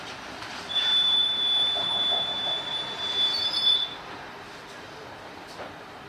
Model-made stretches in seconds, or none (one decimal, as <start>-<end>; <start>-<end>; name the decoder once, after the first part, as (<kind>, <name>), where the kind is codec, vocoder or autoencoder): 0.0-6.1 (vocoder, BigVGAN v2)

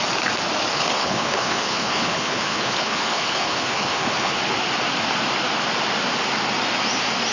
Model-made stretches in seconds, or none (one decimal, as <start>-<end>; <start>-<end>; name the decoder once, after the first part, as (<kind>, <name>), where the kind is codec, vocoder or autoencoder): 0.7-4.4 (codec, HILCodec)

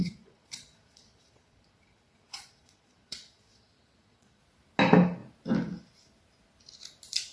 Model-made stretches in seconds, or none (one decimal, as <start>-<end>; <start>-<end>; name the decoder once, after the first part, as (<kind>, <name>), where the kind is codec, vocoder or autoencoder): 0.0-4.4 (vocoder, Vocos)

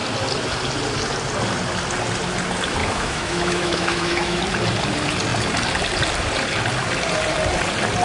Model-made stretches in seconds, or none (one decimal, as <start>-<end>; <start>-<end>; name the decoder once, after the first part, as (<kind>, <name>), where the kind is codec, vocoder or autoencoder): 2.8-4.4 (autoencoder, DAC-VAE)

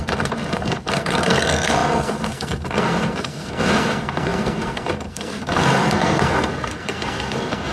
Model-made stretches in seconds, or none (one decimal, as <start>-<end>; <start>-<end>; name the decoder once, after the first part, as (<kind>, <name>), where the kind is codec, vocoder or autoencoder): 0.0-7.7 (codec, SNAC)

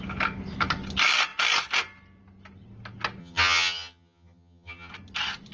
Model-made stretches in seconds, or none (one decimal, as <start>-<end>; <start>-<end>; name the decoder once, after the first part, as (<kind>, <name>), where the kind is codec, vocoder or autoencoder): 3.2-4.9 (vocoder, HiFi-GAN)

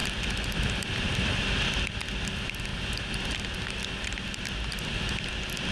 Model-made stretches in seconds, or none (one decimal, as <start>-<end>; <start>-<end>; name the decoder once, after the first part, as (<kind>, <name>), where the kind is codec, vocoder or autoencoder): none